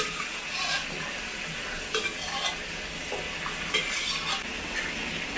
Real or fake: real